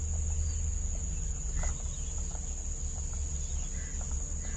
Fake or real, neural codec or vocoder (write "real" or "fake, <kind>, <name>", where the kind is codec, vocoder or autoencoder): real